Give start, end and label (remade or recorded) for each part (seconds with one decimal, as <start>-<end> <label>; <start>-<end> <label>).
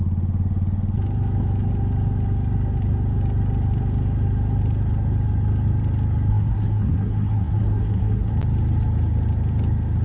0.0-6.3 recorded; 6.3-8.3 remade; 8.3-10.0 recorded